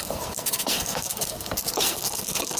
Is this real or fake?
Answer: fake